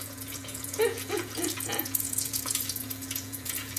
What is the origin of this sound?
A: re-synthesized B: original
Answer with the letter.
A